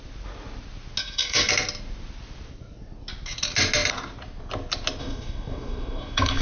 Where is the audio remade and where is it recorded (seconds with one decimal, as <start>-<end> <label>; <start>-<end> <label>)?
0.0-1.0 recorded; 1.0-1.5 remade; 1.5-5.0 recorded; 5.0-6.4 remade